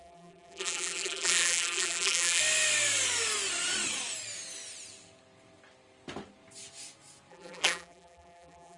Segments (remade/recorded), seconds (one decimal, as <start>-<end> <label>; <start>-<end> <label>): 0.0-2.4 remade; 2.4-7.3 recorded; 7.3-8.8 remade